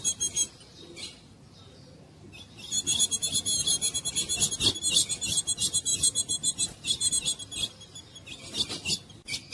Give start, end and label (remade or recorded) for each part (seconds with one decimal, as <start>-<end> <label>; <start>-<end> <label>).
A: 0.0-5.9 recorded; 5.9-7.1 remade; 7.1-9.5 recorded